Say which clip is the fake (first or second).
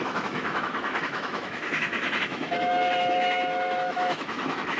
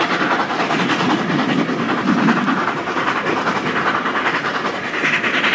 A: first